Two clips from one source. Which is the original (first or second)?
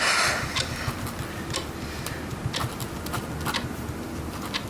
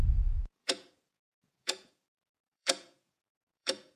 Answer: first